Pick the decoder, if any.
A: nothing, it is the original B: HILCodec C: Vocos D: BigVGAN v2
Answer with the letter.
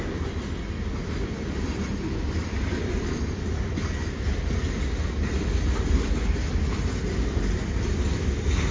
A